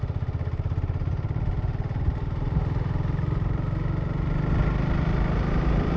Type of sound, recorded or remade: recorded